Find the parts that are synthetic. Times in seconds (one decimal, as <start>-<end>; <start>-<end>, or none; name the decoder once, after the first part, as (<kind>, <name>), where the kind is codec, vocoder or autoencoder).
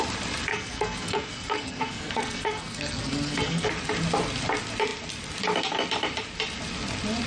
0.5-3.7 (codec, SNAC)